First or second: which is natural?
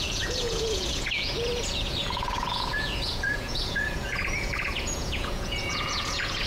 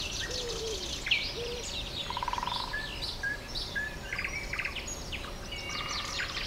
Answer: second